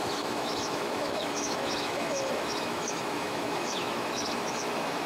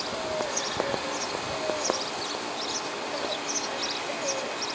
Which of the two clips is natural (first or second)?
second